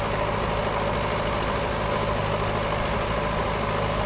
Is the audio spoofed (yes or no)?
no